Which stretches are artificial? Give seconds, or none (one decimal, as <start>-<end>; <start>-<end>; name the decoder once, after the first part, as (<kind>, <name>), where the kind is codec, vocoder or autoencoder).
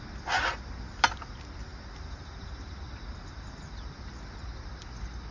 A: none